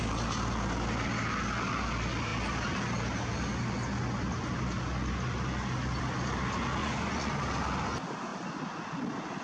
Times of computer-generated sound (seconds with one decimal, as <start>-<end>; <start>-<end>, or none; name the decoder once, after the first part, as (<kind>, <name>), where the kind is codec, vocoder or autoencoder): 6.8-7.4 (vocoder, Vocos)